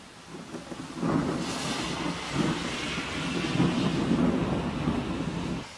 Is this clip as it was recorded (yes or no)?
yes